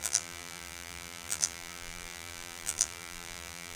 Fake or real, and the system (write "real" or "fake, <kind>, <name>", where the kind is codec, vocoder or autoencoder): fake, vocoder, BigVGAN v2